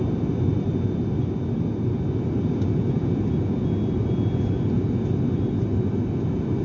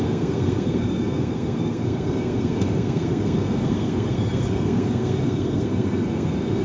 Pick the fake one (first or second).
second